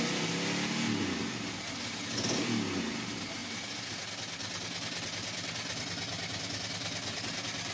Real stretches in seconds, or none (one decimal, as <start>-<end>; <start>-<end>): 0.0-7.7